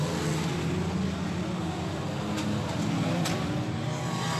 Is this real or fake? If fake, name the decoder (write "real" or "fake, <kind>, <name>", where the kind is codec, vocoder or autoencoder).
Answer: real